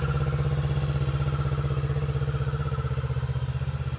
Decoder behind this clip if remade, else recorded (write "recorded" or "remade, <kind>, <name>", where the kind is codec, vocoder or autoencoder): recorded